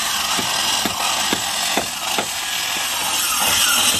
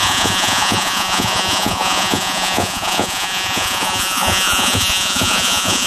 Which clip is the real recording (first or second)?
first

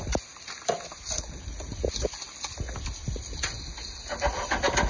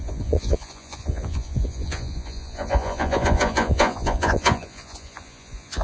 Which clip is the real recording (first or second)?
first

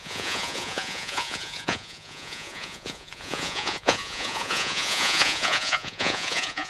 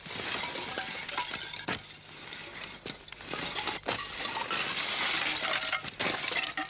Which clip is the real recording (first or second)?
second